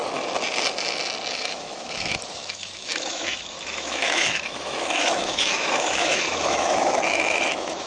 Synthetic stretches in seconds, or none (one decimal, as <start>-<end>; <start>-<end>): 1.4-7.9